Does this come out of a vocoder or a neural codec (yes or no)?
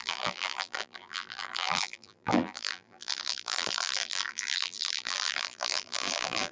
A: yes